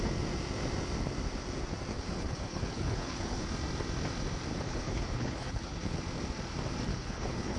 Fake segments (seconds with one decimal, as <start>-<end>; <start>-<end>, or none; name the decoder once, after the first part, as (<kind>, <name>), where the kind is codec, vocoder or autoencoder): 1.9-3.5 (codec, HILCodec); 4.5-6.0; 6.9-7.6